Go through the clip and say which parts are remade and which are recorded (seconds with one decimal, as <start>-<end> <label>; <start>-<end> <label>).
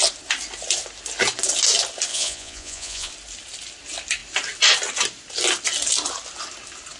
0.0-2.1 recorded; 2.1-3.1 remade; 3.1-7.0 recorded